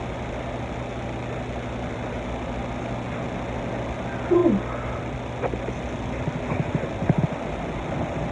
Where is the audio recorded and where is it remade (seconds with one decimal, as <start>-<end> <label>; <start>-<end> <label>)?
0.0-8.3 recorded